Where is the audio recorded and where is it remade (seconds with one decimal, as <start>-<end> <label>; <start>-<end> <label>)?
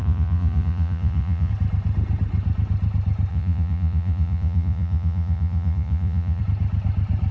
0.0-1.5 remade; 1.5-3.3 recorded; 3.3-6.4 remade; 6.4-7.3 recorded